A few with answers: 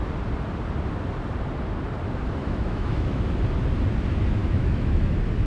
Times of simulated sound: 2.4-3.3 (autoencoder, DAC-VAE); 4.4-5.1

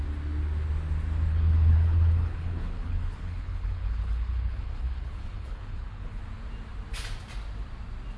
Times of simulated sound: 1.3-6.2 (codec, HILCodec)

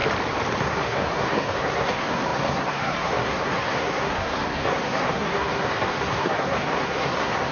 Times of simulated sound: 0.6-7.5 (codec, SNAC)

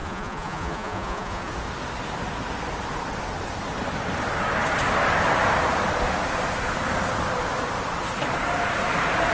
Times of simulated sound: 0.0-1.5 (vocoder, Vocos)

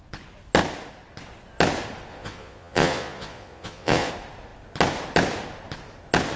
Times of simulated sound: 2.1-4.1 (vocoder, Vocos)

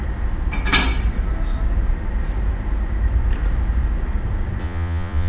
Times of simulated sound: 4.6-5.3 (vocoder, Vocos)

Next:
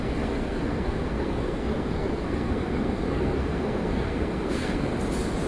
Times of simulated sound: 0.0-4.9 (codec, SNAC)

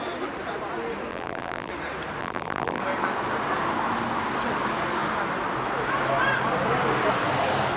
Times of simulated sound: 1.1-1.7 (vocoder, BigVGAN v2); 2.2-2.8